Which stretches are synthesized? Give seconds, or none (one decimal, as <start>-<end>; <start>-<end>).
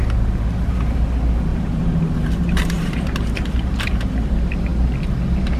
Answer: 1.5-4.3